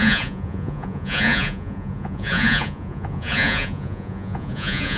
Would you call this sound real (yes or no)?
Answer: no